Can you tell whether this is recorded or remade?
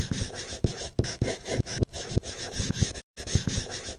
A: remade